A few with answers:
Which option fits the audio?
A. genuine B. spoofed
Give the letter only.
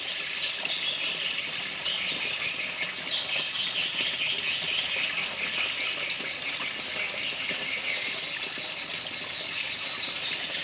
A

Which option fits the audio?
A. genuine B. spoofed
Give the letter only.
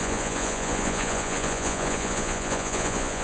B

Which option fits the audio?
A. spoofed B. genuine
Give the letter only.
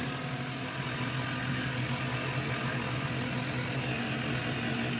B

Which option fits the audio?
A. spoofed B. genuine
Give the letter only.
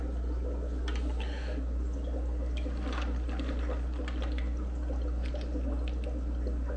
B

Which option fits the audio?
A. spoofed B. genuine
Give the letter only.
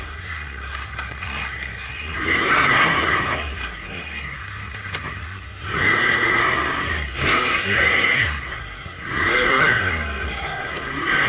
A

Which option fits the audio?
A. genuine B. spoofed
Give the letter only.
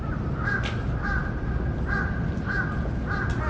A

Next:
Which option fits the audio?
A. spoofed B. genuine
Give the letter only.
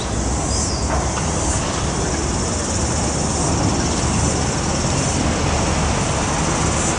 B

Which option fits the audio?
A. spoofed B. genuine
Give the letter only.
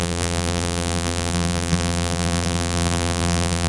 A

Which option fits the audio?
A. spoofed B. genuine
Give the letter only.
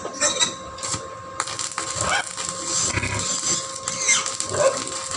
B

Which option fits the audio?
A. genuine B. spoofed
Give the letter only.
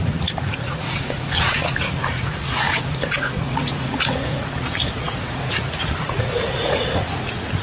B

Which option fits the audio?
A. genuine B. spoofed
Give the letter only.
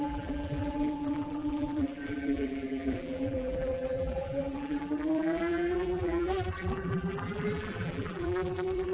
B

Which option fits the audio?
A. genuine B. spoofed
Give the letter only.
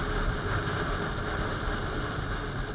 A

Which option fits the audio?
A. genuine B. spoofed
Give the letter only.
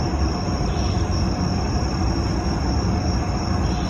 A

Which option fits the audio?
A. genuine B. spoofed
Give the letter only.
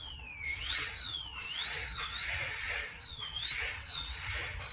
B